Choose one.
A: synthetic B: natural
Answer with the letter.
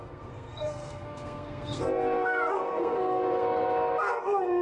A